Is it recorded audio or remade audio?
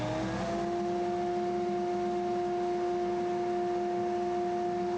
recorded